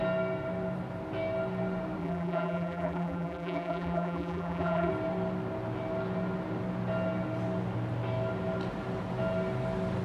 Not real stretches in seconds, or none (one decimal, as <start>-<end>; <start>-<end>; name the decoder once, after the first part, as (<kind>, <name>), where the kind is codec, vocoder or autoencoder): 2.0-4.9 (vocoder, BigVGAN v2)